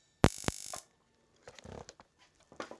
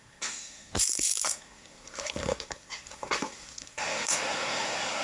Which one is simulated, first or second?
second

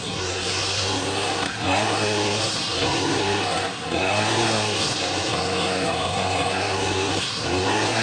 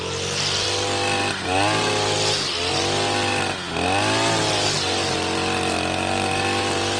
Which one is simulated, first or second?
first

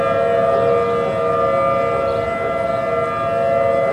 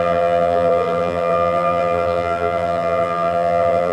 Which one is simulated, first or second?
second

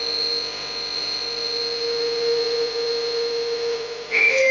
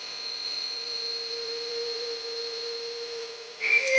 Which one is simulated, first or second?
second